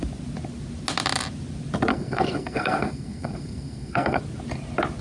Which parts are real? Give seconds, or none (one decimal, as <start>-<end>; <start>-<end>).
0.0-1.9; 4.2-5.0